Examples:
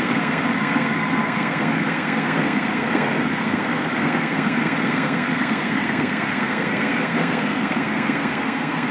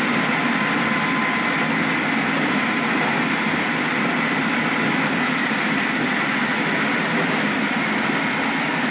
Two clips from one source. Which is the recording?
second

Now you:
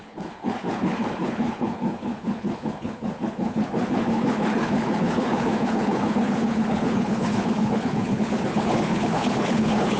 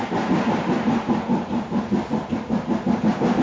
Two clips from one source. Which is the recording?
second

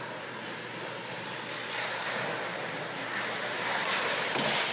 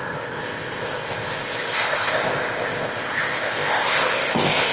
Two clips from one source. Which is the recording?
first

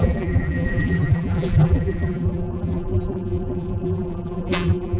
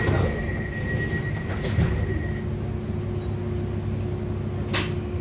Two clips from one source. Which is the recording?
second